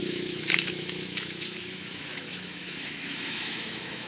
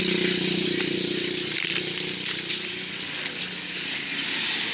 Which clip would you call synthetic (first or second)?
first